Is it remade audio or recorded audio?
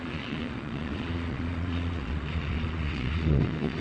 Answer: remade